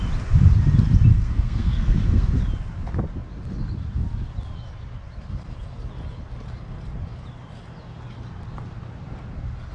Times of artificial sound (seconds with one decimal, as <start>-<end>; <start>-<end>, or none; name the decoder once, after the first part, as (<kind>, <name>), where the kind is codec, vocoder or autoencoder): 1.1-2.4 (codec, SNAC)